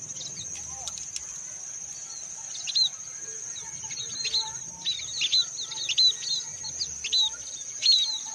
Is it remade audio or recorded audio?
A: recorded